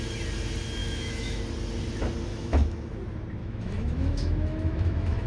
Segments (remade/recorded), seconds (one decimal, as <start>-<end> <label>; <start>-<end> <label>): 0.0-0.8 recorded; 0.8-1.4 remade; 1.4-2.3 recorded; 2.3-2.9 remade; 2.9-3.4 recorded; 3.4-5.3 remade